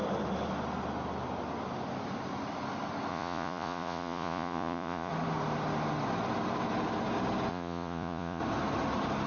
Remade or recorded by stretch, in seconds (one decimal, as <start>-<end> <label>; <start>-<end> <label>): 0.0-3.1 recorded; 3.1-5.1 remade; 5.1-7.5 recorded; 7.5-8.4 remade; 8.4-9.3 recorded